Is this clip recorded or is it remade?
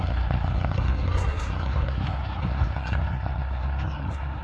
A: remade